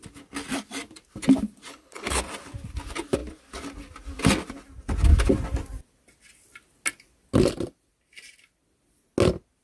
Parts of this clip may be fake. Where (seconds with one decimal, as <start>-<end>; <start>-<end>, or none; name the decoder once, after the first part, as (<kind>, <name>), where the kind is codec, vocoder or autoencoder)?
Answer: 1.7-2.2 (codec, HILCodec)

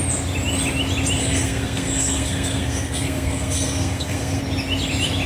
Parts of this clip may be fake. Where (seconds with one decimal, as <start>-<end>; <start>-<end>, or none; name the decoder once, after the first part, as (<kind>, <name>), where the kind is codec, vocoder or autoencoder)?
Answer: 1.2-4.4 (codec, SNAC)

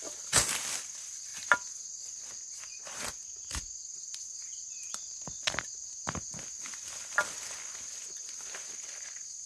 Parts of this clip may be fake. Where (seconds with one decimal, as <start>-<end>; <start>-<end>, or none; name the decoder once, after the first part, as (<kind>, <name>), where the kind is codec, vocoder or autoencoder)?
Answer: none